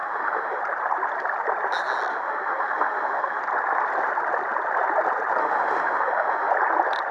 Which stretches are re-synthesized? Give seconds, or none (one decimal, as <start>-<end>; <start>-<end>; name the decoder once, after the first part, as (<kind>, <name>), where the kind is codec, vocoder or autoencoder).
0.0-0.6 (autoencoder, DAC-VAE); 2.1-3.4; 5.4-6.5